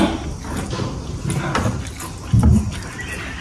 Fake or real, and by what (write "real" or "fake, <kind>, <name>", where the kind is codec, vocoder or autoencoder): real